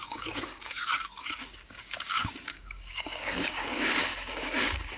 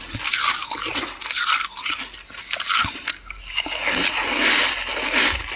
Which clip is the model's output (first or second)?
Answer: first